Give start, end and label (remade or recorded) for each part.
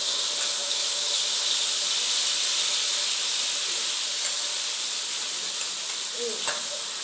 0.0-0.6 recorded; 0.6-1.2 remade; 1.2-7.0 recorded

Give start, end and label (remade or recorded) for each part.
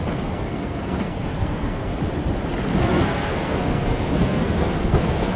0.0-1.9 remade; 1.9-2.8 recorded; 2.8-5.4 remade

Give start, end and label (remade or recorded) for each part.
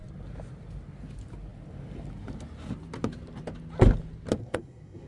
0.0-4.4 recorded; 4.4-5.1 remade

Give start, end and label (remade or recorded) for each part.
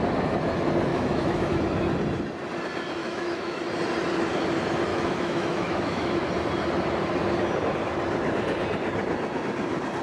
0.0-0.9 recorded; 0.9-1.6 remade; 1.6-3.0 recorded; 3.0-3.6 remade; 3.6-4.9 recorded; 4.9-6.3 remade; 6.3-10.0 recorded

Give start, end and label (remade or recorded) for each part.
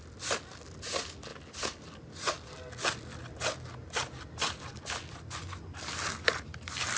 0.0-1.3 recorded; 1.3-5.4 remade; 5.4-7.0 recorded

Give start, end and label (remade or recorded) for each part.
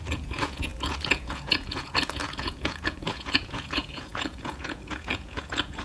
0.0-5.8 remade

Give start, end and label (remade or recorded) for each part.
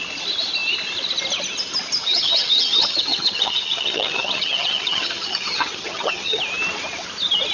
0.0-2.0 recorded; 2.0-6.4 remade; 6.4-7.5 recorded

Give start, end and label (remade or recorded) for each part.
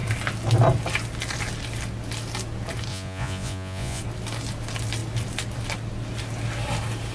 0.0-2.9 recorded; 2.9-4.0 remade; 4.0-7.1 recorded